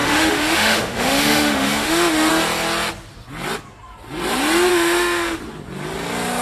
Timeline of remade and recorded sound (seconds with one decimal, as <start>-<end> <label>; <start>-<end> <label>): 0.0-2.3 remade; 2.3-4.7 recorded; 4.7-5.4 remade; 5.4-6.4 recorded